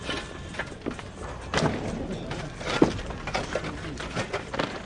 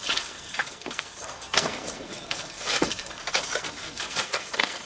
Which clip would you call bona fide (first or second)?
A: first